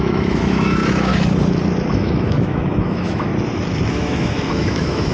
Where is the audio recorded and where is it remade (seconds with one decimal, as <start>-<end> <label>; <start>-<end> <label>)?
0.0-1.1 remade; 1.1-1.9 recorded; 1.9-3.3 remade; 3.3-3.9 recorded; 3.9-5.1 remade